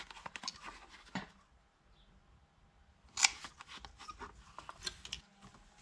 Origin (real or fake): real